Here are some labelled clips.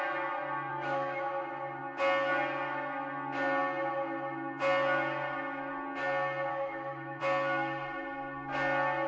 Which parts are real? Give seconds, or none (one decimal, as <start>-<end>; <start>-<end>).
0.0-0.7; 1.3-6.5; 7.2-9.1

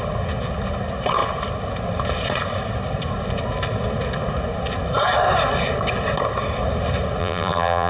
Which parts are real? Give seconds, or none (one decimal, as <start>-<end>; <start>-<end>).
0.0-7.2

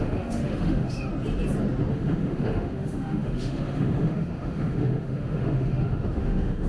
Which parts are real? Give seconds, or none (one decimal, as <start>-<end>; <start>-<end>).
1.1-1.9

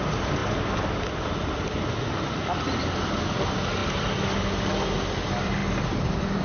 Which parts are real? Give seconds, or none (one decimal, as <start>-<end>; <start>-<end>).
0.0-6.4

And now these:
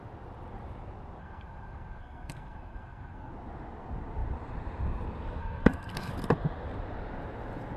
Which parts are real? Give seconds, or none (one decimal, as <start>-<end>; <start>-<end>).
0.0-1.2; 3.3-5.4; 6.1-7.8